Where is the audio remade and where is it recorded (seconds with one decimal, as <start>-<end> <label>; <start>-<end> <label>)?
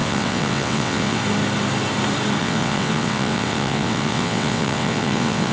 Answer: 0.0-1.2 remade; 1.2-2.4 recorded; 2.4-5.5 remade